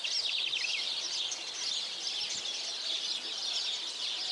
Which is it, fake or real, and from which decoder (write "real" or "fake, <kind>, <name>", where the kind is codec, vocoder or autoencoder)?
real